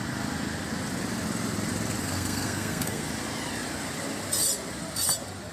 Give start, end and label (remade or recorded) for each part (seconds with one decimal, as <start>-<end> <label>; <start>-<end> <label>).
0.0-2.0 recorded; 2.0-3.0 remade; 3.0-5.5 recorded